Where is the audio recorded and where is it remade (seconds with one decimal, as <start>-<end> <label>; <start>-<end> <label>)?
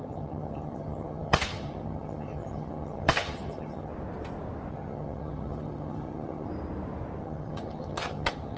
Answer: 0.0-3.9 remade; 3.9-4.7 recorded; 4.7-6.5 remade; 6.5-7.2 recorded; 7.2-8.6 remade